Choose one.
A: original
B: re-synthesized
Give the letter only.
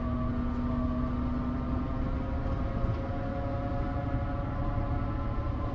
A